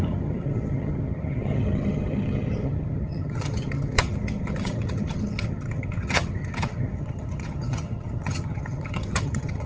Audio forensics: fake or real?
fake